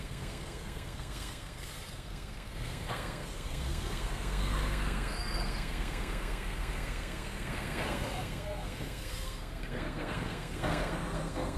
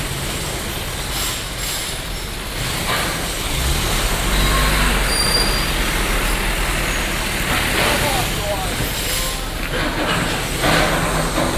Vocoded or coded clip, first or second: first